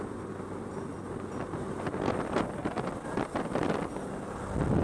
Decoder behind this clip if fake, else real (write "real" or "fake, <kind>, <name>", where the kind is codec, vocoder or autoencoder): real